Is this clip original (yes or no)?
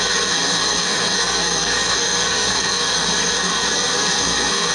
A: no